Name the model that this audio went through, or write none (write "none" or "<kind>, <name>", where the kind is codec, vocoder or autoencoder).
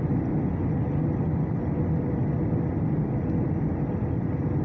none